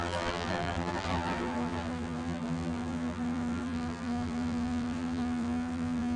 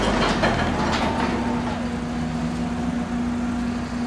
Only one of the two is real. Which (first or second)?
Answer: second